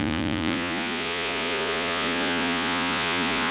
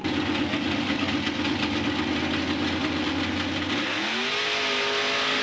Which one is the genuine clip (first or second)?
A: second